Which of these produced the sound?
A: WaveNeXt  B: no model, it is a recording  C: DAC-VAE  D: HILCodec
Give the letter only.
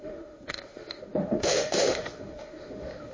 C